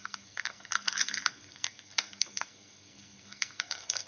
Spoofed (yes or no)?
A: yes